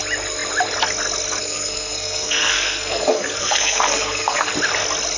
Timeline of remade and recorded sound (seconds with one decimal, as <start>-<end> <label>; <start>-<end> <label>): 0.0-1.4 recorded; 1.4-4.5 remade; 4.5-5.2 recorded